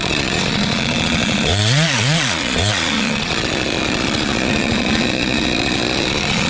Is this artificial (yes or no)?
yes